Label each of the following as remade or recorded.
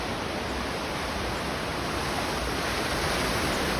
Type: recorded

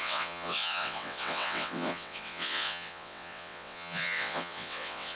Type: remade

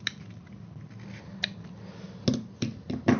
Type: recorded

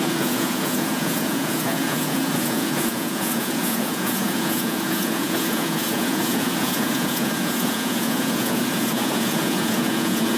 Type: remade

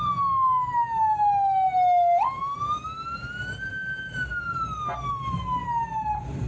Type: recorded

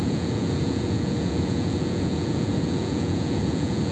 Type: remade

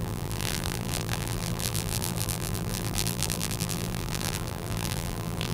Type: remade